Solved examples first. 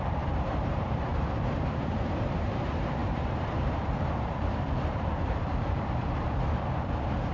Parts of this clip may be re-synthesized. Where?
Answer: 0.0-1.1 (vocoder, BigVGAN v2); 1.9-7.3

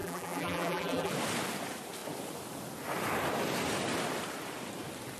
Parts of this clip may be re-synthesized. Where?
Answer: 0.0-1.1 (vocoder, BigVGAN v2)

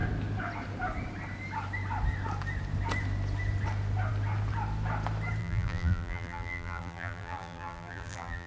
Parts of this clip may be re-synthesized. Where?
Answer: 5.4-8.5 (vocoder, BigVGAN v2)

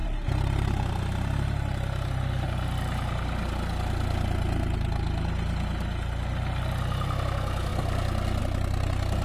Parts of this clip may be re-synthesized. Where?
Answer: 0.0-1.0 (vocoder, BigVGAN v2)

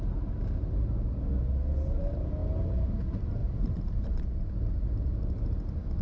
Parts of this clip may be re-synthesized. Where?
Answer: 3.4-4.3 (vocoder, BigVGAN v2)

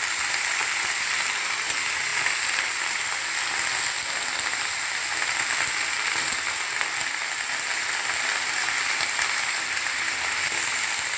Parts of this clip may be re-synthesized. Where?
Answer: none

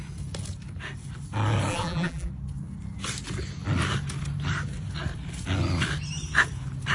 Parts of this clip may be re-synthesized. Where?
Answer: 1.7-2.3 (vocoder, BigVGAN v2)

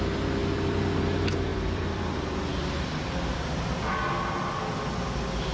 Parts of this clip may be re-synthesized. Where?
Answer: 0.4-1.1 (vocoder, BigVGAN v2); 1.5-2.0; 2.5-3.1